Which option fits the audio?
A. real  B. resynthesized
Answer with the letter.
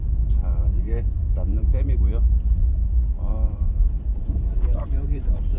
B